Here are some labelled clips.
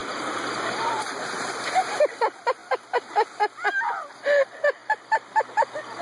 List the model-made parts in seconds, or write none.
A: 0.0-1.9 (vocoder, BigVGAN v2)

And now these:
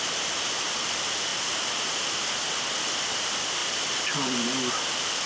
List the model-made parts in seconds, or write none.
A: 3.6-4.7 (vocoder, BigVGAN v2)

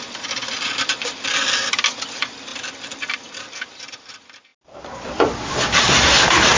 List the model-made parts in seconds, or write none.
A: 0.0-4.5 (vocoder, BigVGAN v2); 5.6-6.6